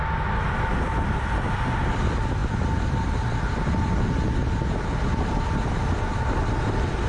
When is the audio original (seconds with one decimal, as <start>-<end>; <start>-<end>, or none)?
0.0-7.1